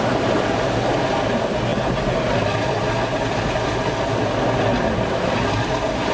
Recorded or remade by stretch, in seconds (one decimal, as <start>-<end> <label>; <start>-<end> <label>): 0.0-6.1 recorded